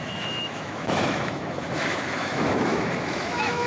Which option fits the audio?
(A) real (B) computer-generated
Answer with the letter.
B